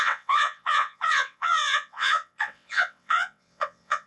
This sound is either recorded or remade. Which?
remade